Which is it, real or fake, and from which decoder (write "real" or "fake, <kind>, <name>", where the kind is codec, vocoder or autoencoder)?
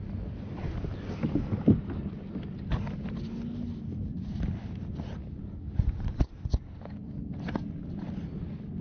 real